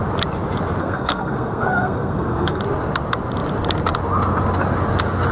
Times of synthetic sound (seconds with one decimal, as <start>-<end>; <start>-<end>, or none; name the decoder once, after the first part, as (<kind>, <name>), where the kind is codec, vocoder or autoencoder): 0.8-2.6 (codec, SNAC)

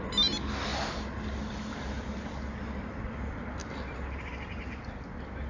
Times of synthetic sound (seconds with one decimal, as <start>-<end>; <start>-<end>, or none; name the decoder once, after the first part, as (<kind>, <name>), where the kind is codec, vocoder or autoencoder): none

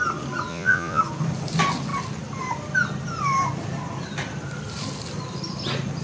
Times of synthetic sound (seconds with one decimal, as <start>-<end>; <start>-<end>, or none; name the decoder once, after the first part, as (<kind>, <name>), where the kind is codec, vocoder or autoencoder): 0.5-1.0 (vocoder, Vocos)

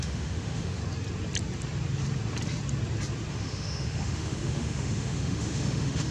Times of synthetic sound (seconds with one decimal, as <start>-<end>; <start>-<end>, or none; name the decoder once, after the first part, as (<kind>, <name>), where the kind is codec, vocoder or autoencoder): 0.0-0.8 (autoencoder, DAC-VAE); 3.3-6.1

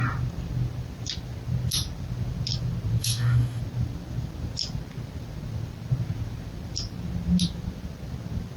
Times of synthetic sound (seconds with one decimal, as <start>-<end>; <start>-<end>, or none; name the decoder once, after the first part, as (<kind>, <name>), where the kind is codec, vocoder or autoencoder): 3.0-3.6 (autoencoder, DAC-VAE)

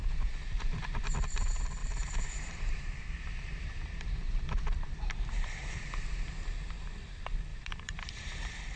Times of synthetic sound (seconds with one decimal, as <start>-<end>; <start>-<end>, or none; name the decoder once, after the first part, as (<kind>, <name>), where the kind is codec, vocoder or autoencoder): 1.8-5.7 (vocoder, BigVGAN v2); 7.5-8.3